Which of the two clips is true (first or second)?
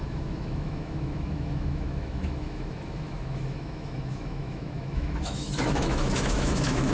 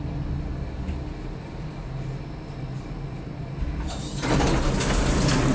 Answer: second